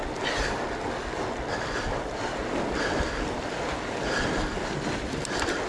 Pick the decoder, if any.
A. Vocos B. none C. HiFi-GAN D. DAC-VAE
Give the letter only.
B